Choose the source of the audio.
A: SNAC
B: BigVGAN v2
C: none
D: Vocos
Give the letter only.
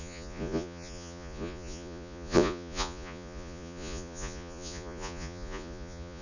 D